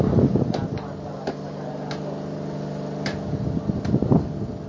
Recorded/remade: recorded